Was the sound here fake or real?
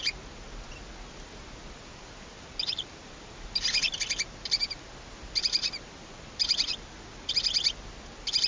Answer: real